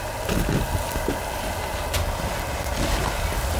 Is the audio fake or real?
real